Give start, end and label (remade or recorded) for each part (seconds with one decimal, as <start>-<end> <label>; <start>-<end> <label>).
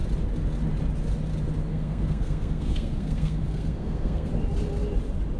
0.0-1.7 recorded; 1.7-4.3 remade; 4.3-5.4 recorded